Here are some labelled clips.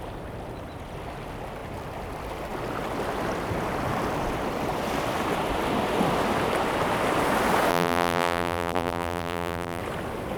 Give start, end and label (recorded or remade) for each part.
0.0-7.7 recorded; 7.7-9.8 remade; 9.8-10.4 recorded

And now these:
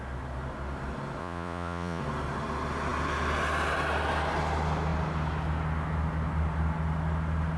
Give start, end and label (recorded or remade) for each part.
0.0-1.2 recorded; 1.2-2.0 remade; 2.0-7.6 recorded

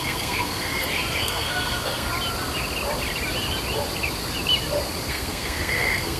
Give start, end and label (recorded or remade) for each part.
0.0-0.7 remade; 0.7-1.2 recorded; 1.2-2.1 remade; 2.1-5.1 recorded; 5.1-6.2 remade

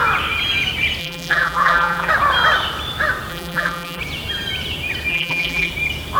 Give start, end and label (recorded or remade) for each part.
0.0-1.0 recorded; 1.0-2.1 remade; 2.1-3.3 recorded; 3.3-4.0 remade; 4.0-5.1 recorded; 5.1-5.7 remade; 5.7-6.2 recorded

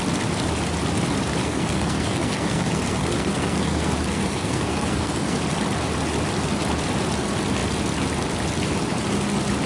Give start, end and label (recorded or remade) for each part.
0.0-1.4 recorded; 1.4-5.4 remade; 5.4-9.7 recorded

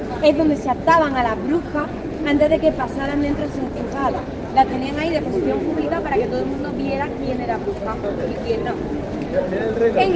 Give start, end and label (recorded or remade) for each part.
0.0-1.7 recorded; 1.7-2.9 remade; 2.9-10.2 recorded